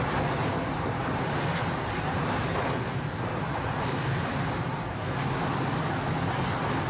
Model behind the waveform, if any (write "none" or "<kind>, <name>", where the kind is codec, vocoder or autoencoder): none